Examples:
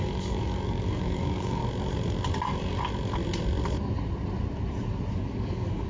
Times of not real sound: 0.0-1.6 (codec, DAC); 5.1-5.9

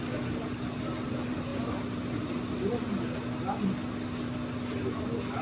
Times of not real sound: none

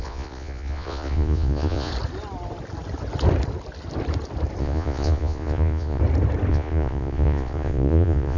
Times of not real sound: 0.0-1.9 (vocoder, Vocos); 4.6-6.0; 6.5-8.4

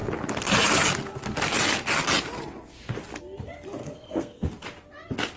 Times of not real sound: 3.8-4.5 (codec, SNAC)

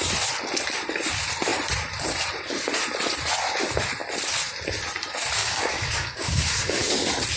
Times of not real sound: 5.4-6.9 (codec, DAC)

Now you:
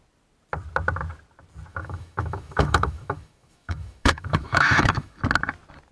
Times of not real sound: 1.7-5.2 (autoencoder, DAC-VAE)

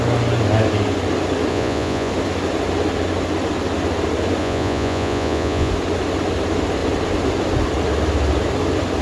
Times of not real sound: 1.5-2.1 (vocoder, Vocos); 4.4-5.7